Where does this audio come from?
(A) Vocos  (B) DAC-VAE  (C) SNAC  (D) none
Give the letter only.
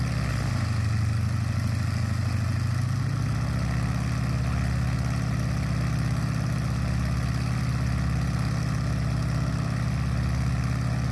D